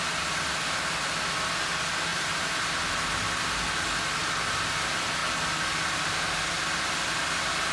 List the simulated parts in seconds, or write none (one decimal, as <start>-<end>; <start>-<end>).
2.1-2.7